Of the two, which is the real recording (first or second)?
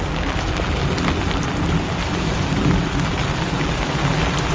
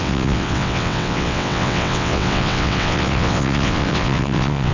first